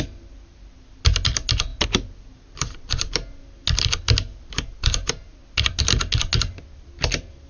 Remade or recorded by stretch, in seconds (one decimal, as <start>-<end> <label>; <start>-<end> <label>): 0.0-7.5 recorded